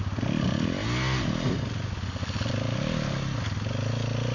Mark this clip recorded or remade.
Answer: recorded